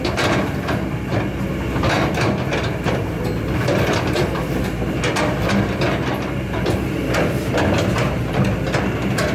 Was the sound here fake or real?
real